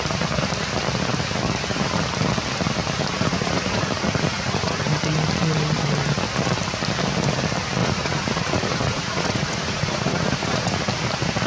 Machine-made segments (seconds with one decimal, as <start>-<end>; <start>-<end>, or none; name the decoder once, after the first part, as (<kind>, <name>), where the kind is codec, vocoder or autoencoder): 3.1-4.9 (vocoder, Vocos); 7.8-10.8